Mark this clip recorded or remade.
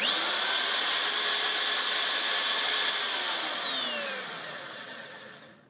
recorded